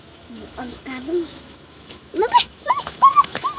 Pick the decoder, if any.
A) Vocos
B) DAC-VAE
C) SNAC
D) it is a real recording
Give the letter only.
B